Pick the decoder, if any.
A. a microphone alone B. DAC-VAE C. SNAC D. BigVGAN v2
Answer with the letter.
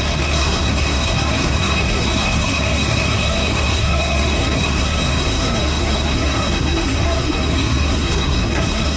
C